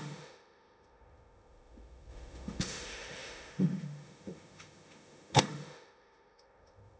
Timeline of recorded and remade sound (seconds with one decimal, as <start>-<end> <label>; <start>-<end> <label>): 0.0-7.0 remade